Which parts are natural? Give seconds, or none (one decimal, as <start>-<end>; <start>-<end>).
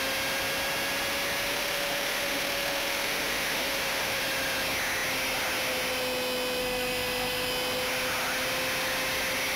0.0-1.5; 4.2-6.6; 7.5-9.6